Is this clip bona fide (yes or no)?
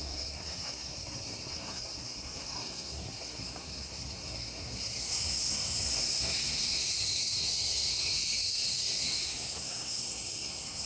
no